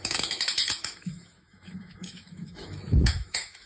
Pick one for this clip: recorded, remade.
remade